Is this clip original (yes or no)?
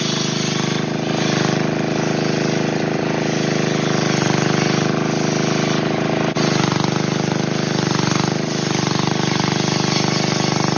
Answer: yes